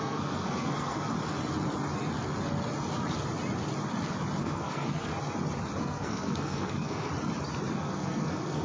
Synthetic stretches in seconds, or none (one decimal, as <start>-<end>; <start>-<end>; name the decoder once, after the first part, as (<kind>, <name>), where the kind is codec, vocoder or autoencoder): 0.0-1.1 (codec, SNAC); 4.4-5.1; 5.8-7.1; 7.7-8.6